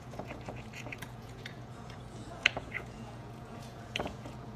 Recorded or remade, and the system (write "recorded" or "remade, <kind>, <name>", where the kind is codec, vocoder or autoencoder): remade, vocoder, Vocos